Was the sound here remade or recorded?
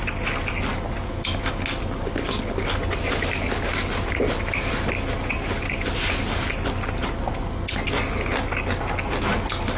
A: recorded